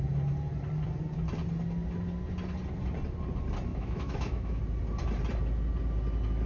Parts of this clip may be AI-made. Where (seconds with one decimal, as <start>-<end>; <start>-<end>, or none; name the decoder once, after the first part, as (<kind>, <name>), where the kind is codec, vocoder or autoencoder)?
3.7-4.6 (autoencoder, DAC-VAE)